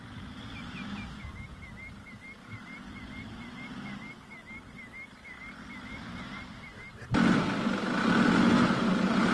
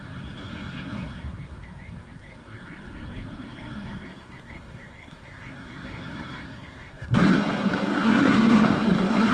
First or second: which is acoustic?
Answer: first